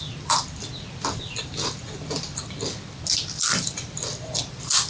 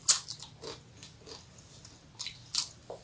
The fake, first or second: first